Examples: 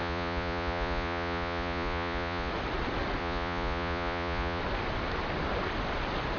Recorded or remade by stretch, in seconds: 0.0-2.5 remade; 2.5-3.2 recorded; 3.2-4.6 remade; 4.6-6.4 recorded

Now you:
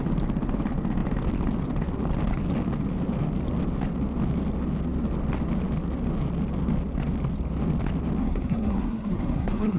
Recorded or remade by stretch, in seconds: 0.0-8.2 recorded; 8.2-9.8 remade

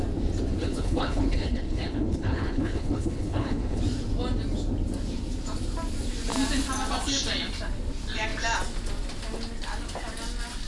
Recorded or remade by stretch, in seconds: 0.0-0.6 recorded; 0.6-3.8 remade; 3.8-10.7 recorded

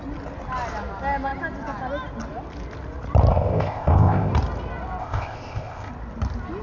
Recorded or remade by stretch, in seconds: 0.0-3.3 recorded; 3.3-4.3 remade; 4.3-5.0 recorded; 5.0-5.9 remade; 5.9-6.6 recorded

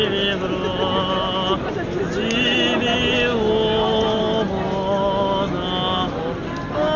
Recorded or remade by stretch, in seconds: 0.0-7.0 recorded